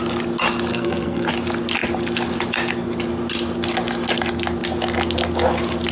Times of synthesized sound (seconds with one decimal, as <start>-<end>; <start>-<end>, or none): 0.7-1.3